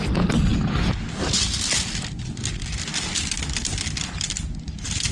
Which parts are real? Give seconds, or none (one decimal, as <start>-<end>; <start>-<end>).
0.0-5.1